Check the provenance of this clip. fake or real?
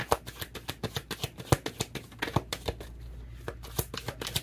real